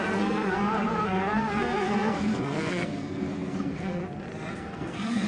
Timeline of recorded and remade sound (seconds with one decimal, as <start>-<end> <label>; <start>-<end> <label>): 0.0-4.0 remade; 4.0-4.5 recorded; 4.5-5.3 remade